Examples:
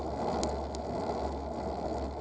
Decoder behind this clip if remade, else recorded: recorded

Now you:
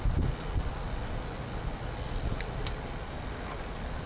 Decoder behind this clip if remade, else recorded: recorded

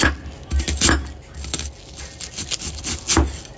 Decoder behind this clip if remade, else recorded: recorded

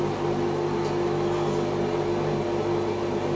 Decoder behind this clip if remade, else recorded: recorded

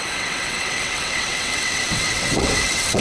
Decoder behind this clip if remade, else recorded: remade, vocoder, WaveNeXt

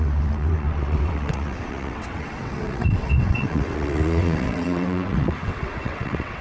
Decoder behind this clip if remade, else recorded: remade, vocoder, WaveNeXt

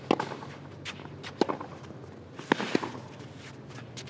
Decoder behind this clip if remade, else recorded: recorded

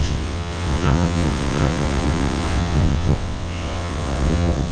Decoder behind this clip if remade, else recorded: remade, vocoder, WaveNeXt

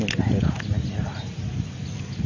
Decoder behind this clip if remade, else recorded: recorded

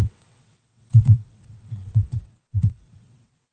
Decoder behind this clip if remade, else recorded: remade, vocoder, WaveNeXt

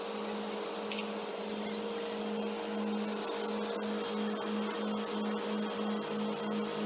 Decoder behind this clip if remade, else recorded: recorded